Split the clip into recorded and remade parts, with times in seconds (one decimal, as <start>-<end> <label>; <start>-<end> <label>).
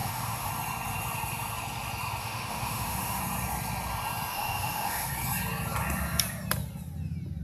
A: 0.0-0.5 remade; 0.5-2.2 recorded; 2.2-3.2 remade; 3.2-4.3 recorded; 4.3-5.1 remade; 5.1-7.4 recorded